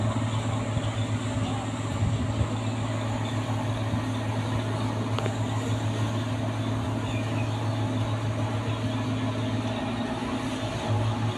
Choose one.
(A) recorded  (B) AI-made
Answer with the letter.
A